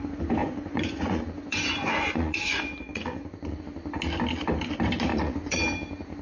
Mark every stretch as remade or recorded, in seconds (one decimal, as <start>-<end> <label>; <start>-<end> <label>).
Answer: 0.0-0.4 recorded; 0.4-3.6 remade; 3.6-5.1 recorded; 5.1-5.6 remade; 5.6-6.2 recorded